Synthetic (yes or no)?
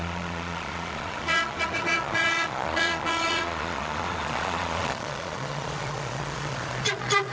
yes